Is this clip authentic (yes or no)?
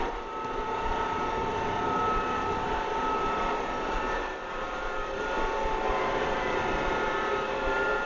no